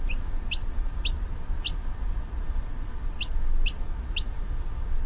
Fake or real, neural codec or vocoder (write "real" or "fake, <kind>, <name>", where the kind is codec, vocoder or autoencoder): real